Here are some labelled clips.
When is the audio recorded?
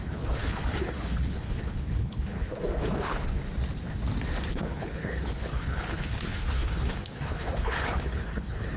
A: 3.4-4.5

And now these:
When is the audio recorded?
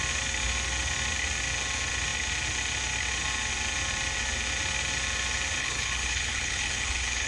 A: 0.0-5.6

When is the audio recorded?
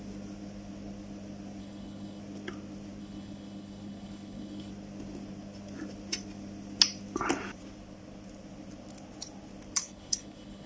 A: 0.0-1.6; 2.2-3.0; 4.7-9.8